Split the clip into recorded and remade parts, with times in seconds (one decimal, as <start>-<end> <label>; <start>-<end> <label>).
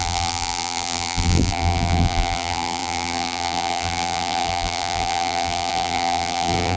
0.0-6.8 remade